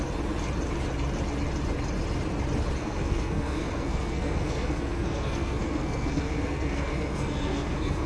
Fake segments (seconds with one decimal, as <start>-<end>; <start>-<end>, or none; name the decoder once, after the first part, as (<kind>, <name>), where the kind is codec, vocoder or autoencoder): 2.8-8.1 (codec, SNAC)